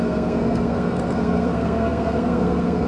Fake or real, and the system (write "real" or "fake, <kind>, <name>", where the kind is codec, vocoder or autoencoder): fake, codec, SNAC